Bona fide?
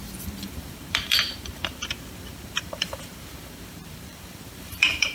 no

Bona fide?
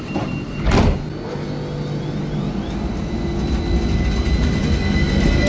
yes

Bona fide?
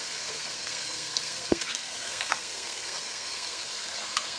no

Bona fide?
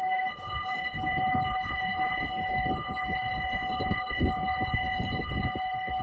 no